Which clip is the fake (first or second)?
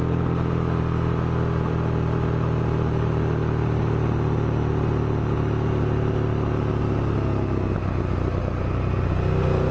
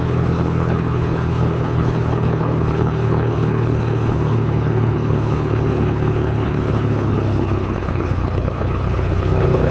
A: second